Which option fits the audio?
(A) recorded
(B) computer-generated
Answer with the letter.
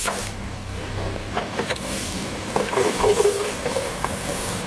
B